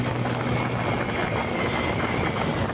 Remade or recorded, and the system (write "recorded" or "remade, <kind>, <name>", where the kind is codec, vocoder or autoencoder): recorded